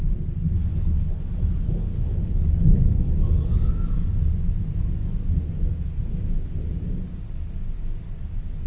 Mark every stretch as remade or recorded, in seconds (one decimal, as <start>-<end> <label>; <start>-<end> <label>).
0.0-0.7 recorded; 0.7-1.2 remade; 1.2-1.9 recorded; 1.9-3.7 remade; 3.7-8.7 recorded